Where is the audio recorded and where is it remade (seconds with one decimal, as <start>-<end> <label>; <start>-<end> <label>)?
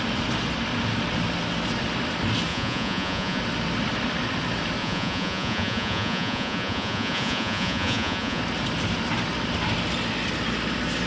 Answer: 0.0-2.5 recorded; 2.5-3.4 remade; 3.4-4.8 recorded; 4.8-8.4 remade; 8.4-11.1 recorded